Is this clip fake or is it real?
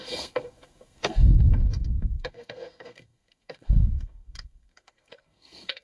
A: fake